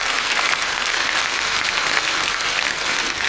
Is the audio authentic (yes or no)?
no